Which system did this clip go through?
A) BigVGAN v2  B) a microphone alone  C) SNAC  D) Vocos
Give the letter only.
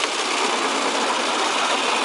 B